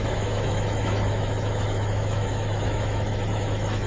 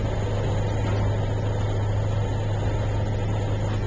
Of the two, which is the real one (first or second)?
second